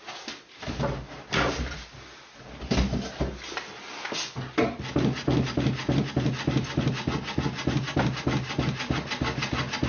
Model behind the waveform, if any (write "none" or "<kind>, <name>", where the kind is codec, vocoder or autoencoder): none